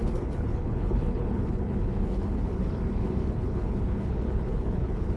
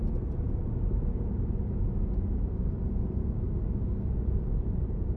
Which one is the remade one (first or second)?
first